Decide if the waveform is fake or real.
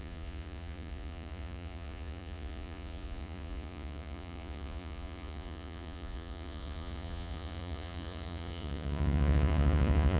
fake